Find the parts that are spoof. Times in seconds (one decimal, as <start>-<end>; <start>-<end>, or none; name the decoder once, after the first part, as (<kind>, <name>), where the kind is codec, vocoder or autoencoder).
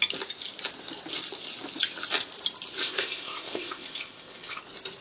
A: 2.8-4.6 (codec, ZipCodec)